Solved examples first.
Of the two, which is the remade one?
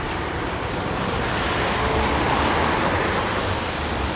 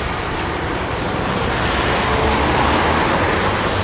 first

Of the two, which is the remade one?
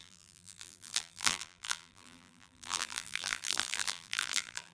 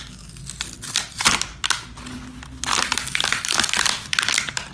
first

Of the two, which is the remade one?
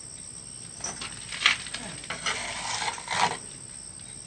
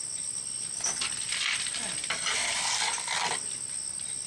second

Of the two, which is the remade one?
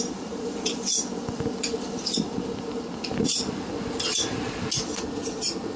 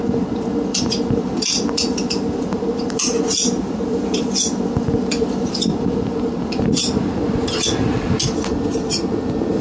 first